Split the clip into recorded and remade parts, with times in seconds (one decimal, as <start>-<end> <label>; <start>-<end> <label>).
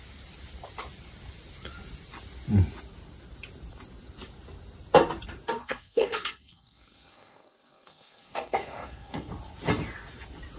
0.0-5.6 recorded; 5.6-9.3 remade; 9.3-10.6 recorded